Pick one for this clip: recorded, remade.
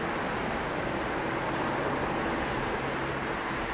recorded